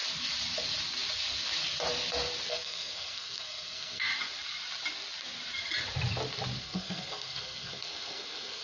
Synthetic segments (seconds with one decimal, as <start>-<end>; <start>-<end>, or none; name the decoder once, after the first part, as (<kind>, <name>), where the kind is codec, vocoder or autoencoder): 2.5-4.1 (codec, SNAC); 6.6-8.6